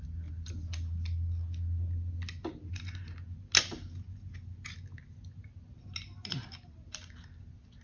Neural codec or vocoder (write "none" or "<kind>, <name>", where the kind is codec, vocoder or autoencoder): none